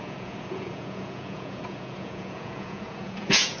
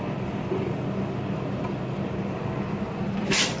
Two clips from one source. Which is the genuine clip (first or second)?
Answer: second